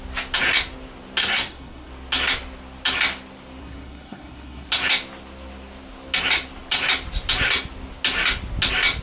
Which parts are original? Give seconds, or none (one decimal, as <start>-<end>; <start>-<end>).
0.0-1.2; 1.9-3.6; 4.7-9.0